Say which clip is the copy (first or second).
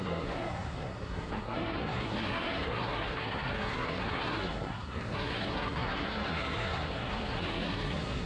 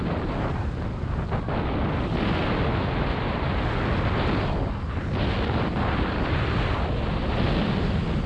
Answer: first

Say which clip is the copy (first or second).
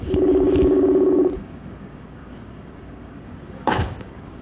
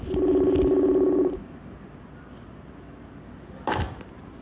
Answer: first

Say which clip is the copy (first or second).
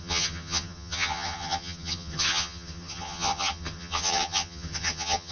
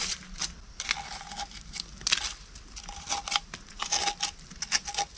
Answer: first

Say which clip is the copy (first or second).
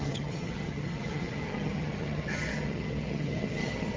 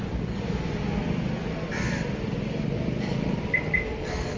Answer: first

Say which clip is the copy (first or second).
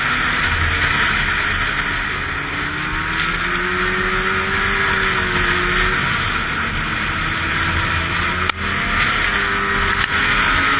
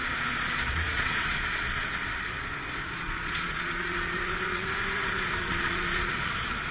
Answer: second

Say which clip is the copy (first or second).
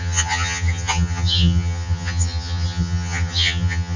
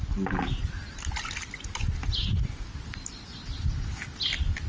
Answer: first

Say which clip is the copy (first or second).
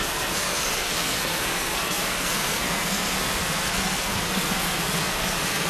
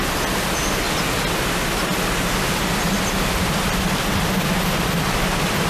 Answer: first